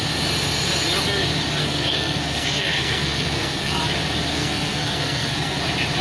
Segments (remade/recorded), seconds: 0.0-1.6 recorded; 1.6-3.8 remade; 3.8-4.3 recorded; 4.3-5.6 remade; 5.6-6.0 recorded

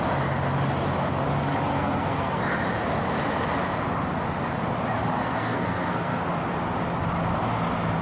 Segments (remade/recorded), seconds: 0.0-1.7 recorded; 1.7-2.4 remade; 2.4-5.2 recorded; 5.2-6.2 remade; 6.2-8.0 recorded